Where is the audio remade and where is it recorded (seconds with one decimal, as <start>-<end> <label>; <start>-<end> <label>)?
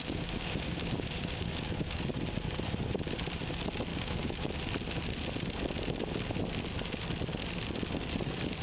0.0-2.0 remade; 2.0-3.9 recorded; 3.9-4.5 remade; 4.5-8.6 recorded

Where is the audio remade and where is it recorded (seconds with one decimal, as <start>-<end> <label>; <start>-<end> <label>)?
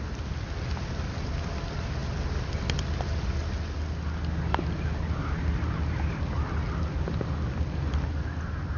0.0-8.8 recorded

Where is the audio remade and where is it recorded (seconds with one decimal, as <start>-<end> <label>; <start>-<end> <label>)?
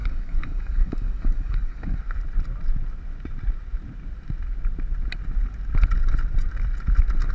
0.0-2.0 remade; 2.0-7.3 recorded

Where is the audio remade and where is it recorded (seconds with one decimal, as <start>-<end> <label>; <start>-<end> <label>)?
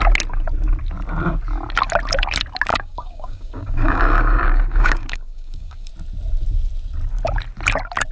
0.0-2.7 recorded; 2.7-5.9 remade; 5.9-8.1 recorded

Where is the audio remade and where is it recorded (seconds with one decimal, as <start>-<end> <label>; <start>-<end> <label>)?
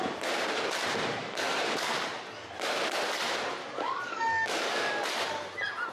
0.0-1.2 recorded; 1.2-1.9 remade; 1.9-3.6 recorded; 3.6-4.9 remade; 4.9-5.9 recorded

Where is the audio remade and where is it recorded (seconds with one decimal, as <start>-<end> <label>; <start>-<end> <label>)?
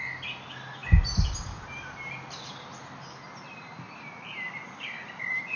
0.0-5.6 recorded